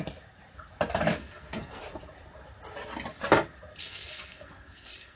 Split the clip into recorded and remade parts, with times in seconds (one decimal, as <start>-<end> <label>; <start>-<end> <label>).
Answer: 0.0-1.2 recorded; 1.2-1.8 remade; 1.8-3.8 recorded; 3.8-5.2 remade

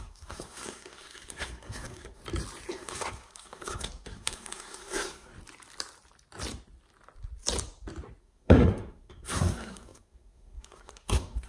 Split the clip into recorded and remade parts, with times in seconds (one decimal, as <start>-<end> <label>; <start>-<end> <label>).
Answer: 0.0-2.2 remade; 2.2-2.7 recorded; 2.7-5.3 remade; 5.3-8.2 recorded; 8.2-11.5 remade

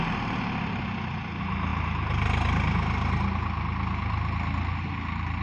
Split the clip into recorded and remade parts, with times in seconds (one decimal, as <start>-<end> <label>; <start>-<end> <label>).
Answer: 0.0-5.4 recorded